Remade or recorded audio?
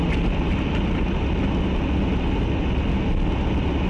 recorded